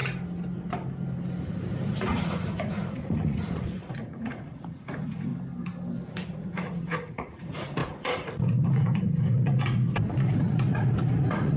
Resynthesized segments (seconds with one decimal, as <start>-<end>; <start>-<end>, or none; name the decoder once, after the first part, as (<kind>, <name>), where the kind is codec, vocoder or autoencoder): 2.0-5.3 (vocoder, Vocos); 6.1-11.6